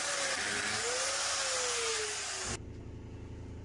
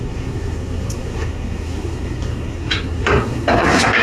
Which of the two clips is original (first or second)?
first